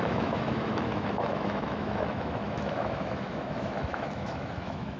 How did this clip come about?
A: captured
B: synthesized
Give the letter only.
B